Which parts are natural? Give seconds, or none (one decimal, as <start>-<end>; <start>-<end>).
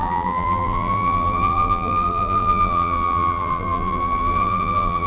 none